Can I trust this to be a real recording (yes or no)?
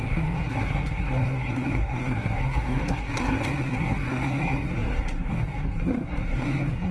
no